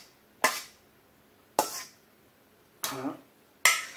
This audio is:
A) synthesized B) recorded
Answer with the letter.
B